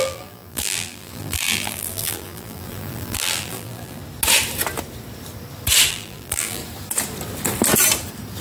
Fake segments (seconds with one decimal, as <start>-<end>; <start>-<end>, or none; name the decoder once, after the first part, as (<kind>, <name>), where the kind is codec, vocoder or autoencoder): 0.0-4.0 (vocoder, BigVGAN v2); 5.9-6.6

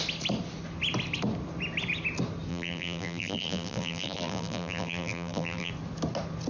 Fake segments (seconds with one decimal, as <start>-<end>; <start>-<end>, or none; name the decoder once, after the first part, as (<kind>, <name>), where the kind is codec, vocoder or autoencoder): 2.5-5.7 (vocoder, BigVGAN v2)